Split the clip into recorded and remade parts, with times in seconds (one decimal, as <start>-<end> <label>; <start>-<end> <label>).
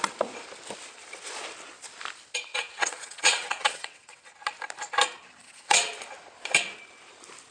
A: 0.0-2.5 recorded; 2.5-4.3 remade; 4.3-5.4 recorded; 5.4-5.9 remade; 5.9-7.5 recorded